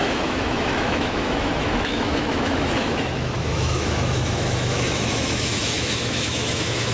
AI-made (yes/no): yes